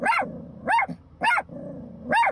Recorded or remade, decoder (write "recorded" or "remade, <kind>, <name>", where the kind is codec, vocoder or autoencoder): recorded